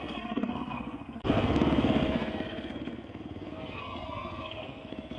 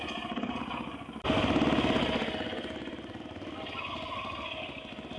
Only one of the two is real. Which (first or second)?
second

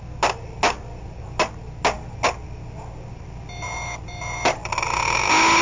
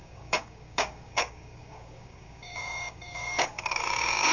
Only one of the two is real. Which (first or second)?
first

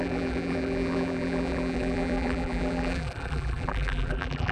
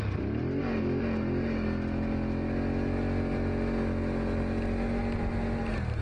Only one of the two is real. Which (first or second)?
second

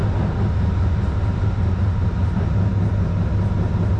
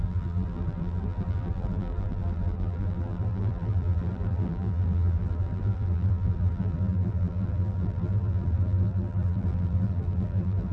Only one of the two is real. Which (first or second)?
first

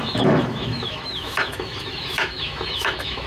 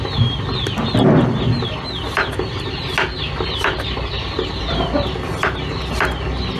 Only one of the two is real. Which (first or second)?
second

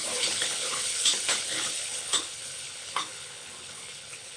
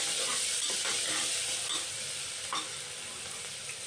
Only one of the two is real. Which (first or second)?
second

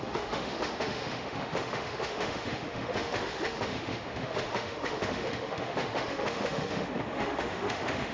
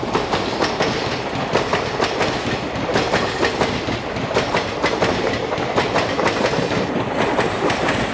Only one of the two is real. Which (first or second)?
second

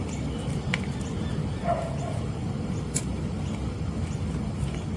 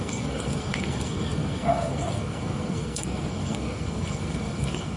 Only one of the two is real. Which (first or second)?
first